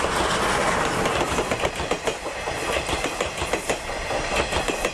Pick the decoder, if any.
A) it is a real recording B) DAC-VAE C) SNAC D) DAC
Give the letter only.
A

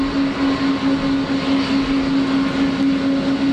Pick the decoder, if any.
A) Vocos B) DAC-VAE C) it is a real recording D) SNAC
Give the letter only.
C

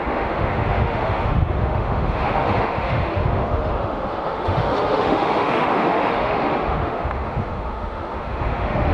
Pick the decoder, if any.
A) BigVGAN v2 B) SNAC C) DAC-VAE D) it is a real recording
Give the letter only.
C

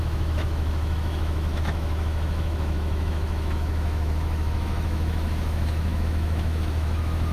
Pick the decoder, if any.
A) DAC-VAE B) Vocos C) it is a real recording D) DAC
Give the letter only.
A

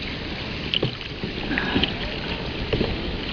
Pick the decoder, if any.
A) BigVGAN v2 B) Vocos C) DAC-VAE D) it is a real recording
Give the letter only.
D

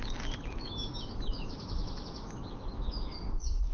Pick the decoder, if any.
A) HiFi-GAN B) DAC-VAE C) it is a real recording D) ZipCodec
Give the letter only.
B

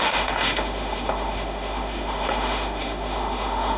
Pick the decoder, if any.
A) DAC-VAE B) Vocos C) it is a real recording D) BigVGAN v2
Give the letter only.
A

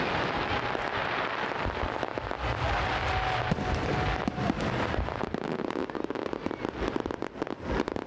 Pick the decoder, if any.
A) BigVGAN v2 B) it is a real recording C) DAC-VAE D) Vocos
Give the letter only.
B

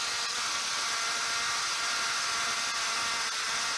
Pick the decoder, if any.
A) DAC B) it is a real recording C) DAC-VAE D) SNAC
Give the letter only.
B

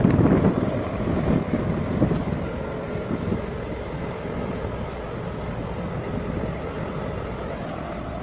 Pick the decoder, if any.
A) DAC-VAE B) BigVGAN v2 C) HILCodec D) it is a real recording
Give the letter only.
D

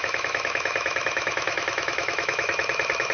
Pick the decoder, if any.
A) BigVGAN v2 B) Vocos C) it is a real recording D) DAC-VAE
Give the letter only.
D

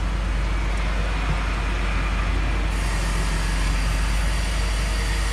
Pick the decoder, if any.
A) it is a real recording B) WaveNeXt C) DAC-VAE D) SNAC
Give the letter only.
A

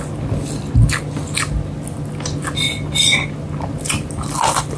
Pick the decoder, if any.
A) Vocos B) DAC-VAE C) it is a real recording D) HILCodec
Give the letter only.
C